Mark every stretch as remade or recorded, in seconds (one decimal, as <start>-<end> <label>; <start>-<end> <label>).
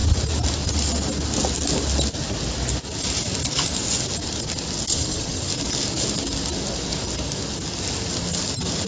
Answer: 0.0-4.9 recorded; 4.9-5.5 remade; 5.5-8.9 recorded